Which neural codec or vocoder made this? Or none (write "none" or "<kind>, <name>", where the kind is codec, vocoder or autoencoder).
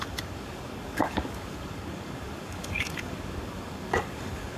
codec, DAC